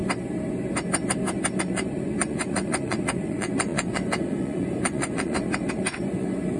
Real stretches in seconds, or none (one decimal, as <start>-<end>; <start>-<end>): 0.0-1.6